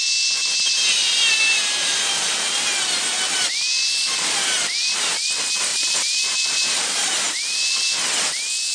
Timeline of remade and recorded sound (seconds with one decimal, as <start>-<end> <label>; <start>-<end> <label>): 0.0-0.4 recorded; 0.4-2.1 remade; 2.1-3.4 recorded; 3.4-5.1 remade; 5.1-5.7 recorded; 5.7-8.0 remade; 8.0-8.7 recorded